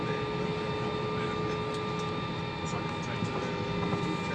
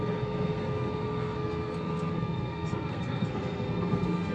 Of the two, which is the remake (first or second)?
second